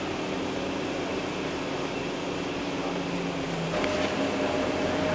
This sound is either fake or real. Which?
real